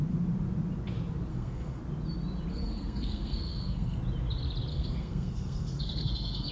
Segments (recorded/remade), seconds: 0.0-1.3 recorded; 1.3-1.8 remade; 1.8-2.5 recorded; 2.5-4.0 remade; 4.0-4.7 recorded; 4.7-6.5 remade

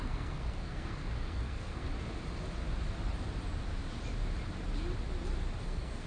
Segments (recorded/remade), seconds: 0.0-1.9 remade; 1.9-5.6 recorded; 5.6-6.1 remade

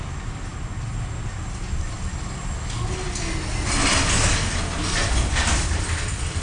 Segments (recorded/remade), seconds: 0.0-6.4 recorded

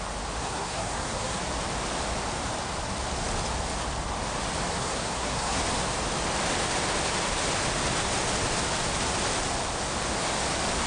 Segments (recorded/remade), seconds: 0.0-0.4 recorded; 0.4-1.4 remade; 1.4-4.8 recorded; 4.8-5.6 remade; 5.6-10.9 recorded